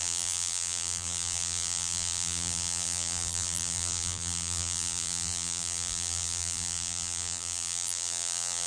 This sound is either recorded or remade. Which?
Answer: remade